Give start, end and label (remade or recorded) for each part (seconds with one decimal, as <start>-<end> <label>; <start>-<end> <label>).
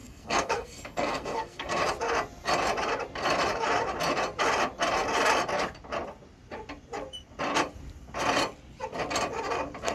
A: 0.0-1.8 remade; 1.8-9.9 recorded